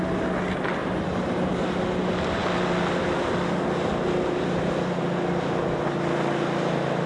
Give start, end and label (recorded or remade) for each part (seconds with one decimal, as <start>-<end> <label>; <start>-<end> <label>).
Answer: 0.0-0.8 recorded; 0.8-1.7 remade; 1.7-7.1 recorded